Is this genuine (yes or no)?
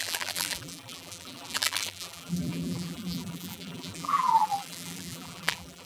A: no